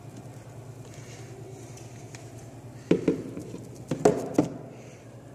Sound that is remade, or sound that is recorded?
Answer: recorded